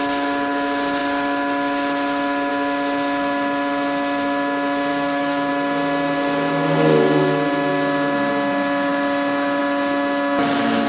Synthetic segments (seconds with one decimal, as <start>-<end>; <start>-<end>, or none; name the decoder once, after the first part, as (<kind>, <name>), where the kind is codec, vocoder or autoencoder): 4.9-5.5 (codec, DAC)